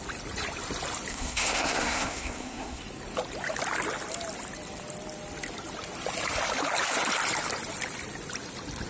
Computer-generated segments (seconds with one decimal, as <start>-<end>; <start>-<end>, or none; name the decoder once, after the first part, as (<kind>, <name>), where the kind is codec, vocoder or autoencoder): 1.1-2.8 (codec, SNAC)